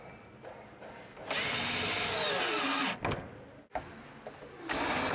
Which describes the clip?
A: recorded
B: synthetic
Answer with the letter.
A